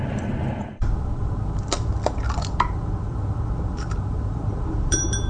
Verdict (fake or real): fake